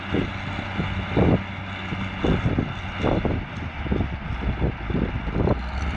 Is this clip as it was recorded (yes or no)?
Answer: yes